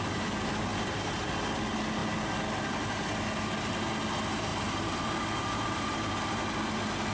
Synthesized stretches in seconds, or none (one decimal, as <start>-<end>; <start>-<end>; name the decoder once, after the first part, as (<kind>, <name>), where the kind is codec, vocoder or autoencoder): 0.7-1.3 (vocoder, BigVGAN v2); 4.5-6.1